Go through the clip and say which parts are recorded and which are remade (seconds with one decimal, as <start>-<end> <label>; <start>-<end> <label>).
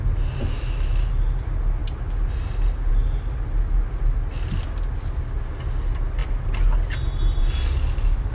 0.0-0.4 recorded; 0.4-1.1 remade; 1.1-8.3 recorded